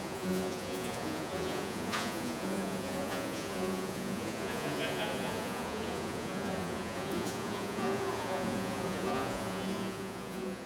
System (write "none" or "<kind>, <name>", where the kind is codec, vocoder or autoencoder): vocoder, Vocos